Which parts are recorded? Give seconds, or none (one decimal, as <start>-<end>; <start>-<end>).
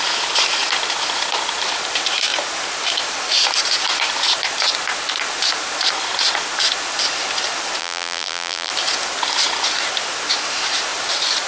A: 0.0-7.8; 8.7-11.5